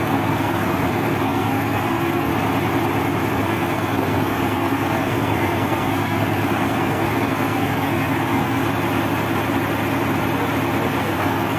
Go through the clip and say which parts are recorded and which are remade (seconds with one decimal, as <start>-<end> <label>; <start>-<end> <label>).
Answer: 0.0-2.3 remade; 2.3-3.3 recorded; 3.3-8.6 remade; 8.6-11.0 recorded; 11.0-11.6 remade